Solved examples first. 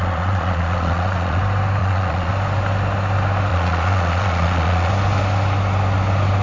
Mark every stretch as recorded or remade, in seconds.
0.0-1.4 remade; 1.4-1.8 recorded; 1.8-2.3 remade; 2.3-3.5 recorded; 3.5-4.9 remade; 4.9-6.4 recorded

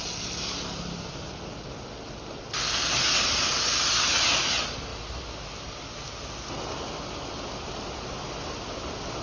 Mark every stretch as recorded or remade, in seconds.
0.0-9.2 recorded

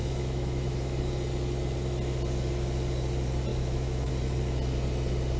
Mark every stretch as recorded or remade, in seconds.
0.0-1.0 remade; 1.0-3.5 recorded; 3.5-4.1 remade; 4.1-5.4 recorded

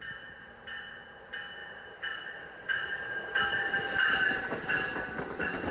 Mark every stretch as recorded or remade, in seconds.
0.0-1.6 recorded; 1.6-3.4 remade; 3.4-5.7 recorded

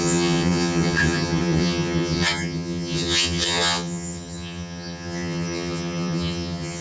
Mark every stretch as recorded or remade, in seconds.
0.0-6.8 remade

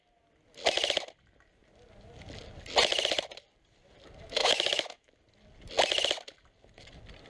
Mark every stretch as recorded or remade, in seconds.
0.0-4.4 recorded; 4.4-5.1 remade; 5.1-7.3 recorded

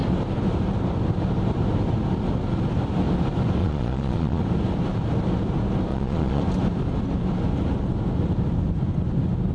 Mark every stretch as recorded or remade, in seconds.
0.0-3.6 recorded; 3.6-4.4 remade; 4.4-5.9 recorded; 5.9-6.4 remade; 6.4-9.5 recorded

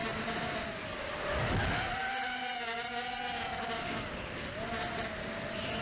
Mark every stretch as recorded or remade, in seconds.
0.0-5.8 recorded